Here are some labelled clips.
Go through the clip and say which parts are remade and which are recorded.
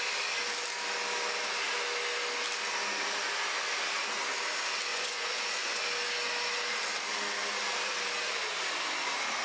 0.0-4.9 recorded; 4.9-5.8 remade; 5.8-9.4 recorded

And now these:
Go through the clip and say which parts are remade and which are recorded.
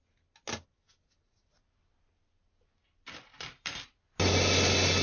0.0-5.0 recorded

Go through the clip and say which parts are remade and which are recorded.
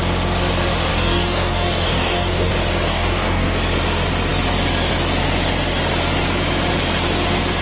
0.0-0.9 recorded; 0.9-2.5 remade; 2.5-2.9 recorded; 2.9-3.5 remade; 3.5-7.6 recorded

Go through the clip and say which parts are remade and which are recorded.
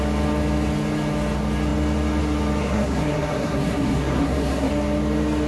0.0-2.6 recorded; 2.6-4.7 remade; 4.7-5.5 recorded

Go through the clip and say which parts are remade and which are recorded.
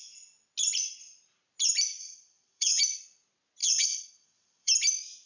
0.0-2.0 recorded; 2.0-2.8 remade; 2.8-3.6 recorded; 3.6-4.7 remade; 4.7-5.3 recorded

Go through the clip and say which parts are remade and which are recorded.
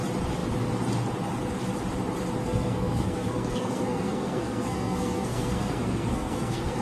0.0-2.4 recorded; 2.4-6.8 remade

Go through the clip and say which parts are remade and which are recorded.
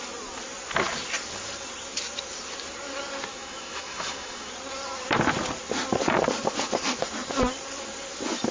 0.0-3.3 recorded; 3.3-4.5 remade; 4.5-8.5 recorded